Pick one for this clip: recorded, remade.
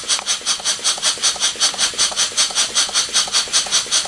recorded